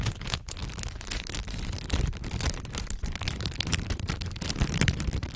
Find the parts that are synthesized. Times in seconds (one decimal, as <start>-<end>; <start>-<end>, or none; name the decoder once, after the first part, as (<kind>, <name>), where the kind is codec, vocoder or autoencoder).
0.0-5.4 (vocoder, BigVGAN v2)